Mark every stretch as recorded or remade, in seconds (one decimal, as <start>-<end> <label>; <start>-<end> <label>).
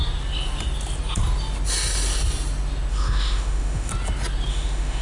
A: 0.0-2.9 recorded; 2.9-3.9 remade; 3.9-4.5 recorded; 4.5-5.0 remade